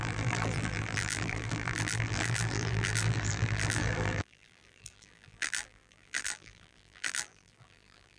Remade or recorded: remade